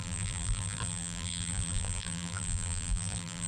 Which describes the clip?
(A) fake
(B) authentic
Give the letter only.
A